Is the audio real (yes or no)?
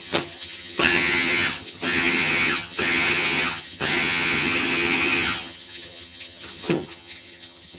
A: no